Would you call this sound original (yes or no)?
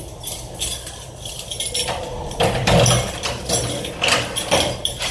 no